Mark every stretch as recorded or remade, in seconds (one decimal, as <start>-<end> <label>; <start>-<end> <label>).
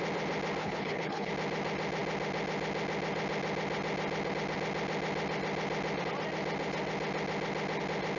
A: 0.0-0.6 recorded; 0.6-1.3 remade; 1.3-8.2 recorded